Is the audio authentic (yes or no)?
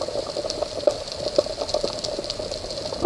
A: yes